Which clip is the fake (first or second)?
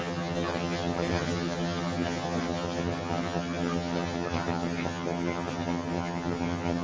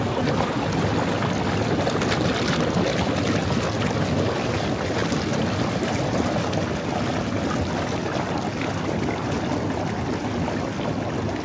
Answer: first